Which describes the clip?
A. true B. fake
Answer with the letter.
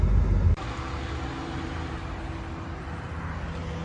A